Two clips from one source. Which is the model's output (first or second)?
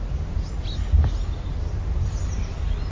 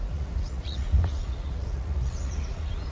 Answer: second